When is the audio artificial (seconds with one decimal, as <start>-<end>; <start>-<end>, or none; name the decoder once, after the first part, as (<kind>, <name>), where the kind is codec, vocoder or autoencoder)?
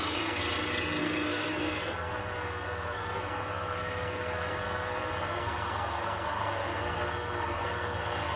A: 0.0-0.4 (codec, SNAC); 1.0-8.4